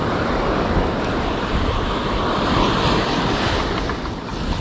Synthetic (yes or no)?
no